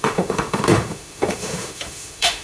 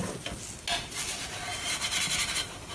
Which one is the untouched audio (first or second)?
second